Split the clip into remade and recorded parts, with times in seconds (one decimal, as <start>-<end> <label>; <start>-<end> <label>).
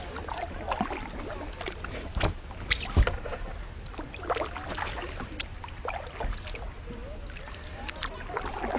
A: 0.0-8.8 recorded